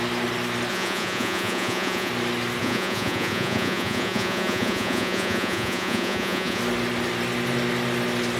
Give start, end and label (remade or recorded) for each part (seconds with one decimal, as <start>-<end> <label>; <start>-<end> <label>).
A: 0.0-0.7 recorded; 0.7-2.1 remade; 2.1-2.6 recorded; 2.6-6.6 remade; 6.6-8.4 recorded